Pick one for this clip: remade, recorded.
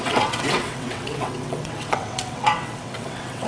remade